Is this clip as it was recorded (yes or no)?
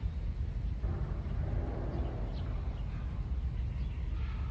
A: yes